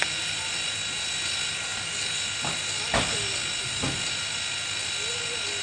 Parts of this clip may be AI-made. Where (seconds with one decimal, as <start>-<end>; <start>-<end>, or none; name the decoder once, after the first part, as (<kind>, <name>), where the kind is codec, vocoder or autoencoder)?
none